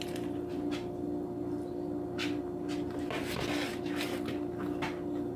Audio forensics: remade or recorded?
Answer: recorded